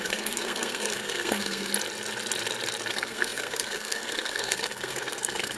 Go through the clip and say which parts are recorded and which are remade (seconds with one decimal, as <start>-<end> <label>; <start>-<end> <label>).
0.0-1.7 remade; 1.7-2.9 recorded; 2.9-5.6 remade